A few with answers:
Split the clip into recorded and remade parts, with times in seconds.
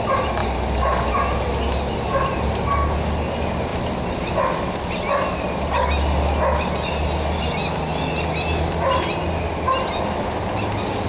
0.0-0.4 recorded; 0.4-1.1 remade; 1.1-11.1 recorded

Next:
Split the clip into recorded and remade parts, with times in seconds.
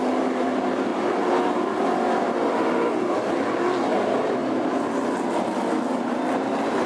0.0-6.9 recorded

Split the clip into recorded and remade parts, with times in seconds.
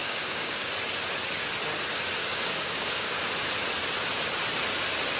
0.0-0.7 remade; 0.7-2.2 recorded; 2.2-3.3 remade; 3.3-5.2 recorded